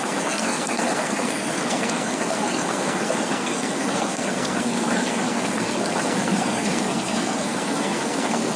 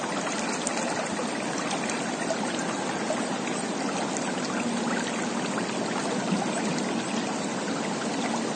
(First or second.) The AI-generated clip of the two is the first